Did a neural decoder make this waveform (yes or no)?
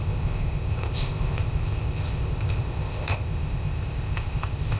yes